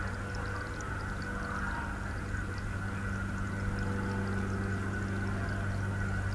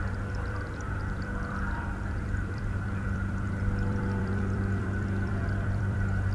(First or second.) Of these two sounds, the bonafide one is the first